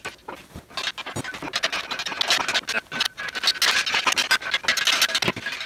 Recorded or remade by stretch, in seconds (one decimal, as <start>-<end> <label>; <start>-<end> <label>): 0.0-5.7 recorded